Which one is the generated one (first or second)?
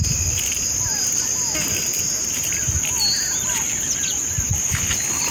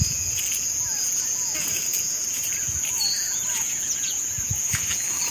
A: second